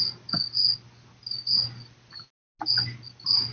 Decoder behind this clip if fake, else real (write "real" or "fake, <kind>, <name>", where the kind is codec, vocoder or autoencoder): real